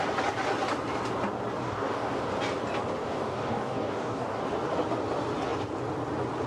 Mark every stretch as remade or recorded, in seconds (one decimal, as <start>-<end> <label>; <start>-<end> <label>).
0.0-1.6 recorded; 1.6-2.2 remade; 2.2-3.0 recorded; 3.0-4.4 remade; 4.4-6.5 recorded